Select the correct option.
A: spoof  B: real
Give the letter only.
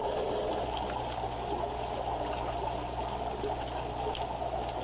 B